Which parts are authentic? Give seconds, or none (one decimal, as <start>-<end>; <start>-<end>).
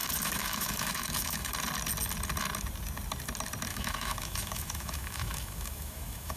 1.5-3.7